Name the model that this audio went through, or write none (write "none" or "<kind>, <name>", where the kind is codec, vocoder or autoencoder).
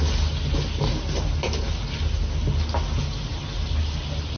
none